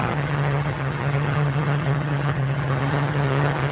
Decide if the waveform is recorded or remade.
remade